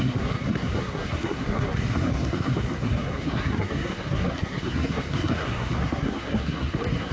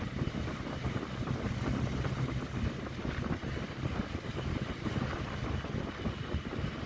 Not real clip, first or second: first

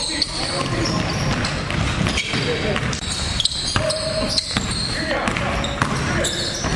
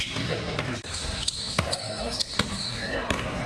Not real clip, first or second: second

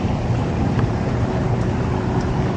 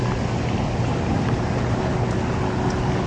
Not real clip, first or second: first